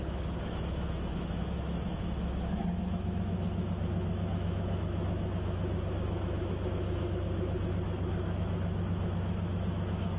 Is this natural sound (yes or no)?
no